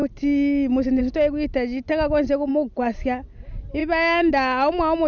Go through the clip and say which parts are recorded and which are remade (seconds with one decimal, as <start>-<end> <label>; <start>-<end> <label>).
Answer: 0.0-3.8 recorded; 3.8-4.3 remade; 4.3-5.1 recorded